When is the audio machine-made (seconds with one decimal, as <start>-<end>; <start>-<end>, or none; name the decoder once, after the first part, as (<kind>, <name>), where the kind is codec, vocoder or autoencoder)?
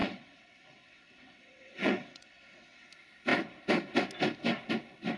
0.0-2.9 (vocoder, WaveNeXt)